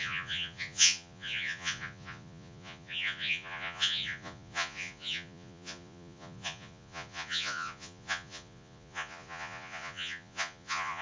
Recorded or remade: remade